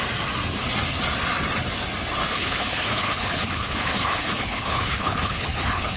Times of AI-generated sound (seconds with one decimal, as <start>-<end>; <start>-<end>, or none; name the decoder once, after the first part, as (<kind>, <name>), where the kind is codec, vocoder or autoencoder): 2.2-6.0 (codec, HILCodec)